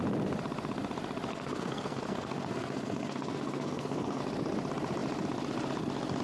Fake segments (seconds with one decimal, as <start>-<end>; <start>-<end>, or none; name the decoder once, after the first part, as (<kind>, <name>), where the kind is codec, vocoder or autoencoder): 1.3-4.2 (codec, SNAC)